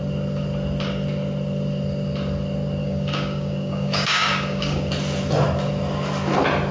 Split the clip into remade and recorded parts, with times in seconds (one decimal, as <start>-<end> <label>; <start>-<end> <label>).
0.0-2.8 recorded; 2.8-4.9 remade; 4.9-6.7 recorded